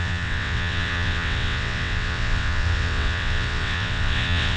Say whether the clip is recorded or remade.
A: remade